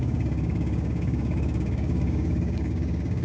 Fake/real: fake